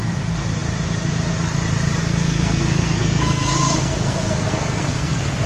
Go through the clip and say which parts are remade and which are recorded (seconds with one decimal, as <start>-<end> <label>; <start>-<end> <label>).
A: 0.0-2.0 recorded; 2.0-5.5 remade